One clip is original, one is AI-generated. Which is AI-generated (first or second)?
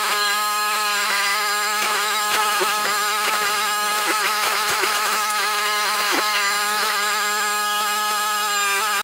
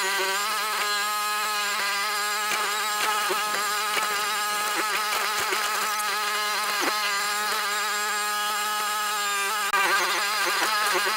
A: first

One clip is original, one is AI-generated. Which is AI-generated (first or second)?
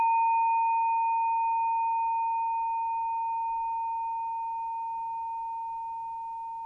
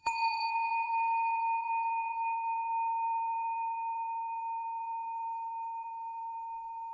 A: second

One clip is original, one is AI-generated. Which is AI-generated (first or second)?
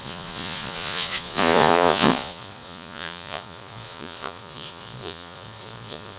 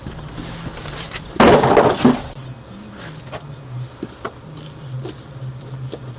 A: first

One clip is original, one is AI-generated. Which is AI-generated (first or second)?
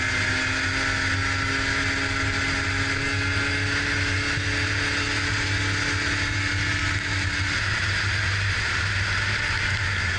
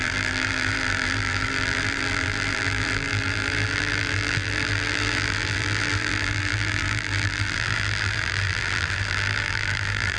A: second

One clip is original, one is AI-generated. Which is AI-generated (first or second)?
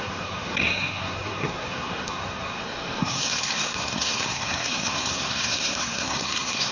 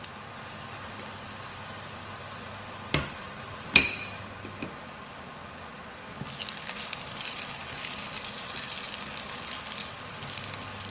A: first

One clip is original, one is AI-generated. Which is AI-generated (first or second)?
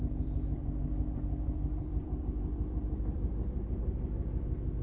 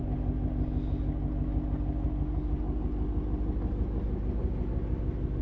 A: first